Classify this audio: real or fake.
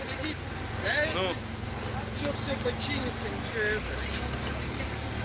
real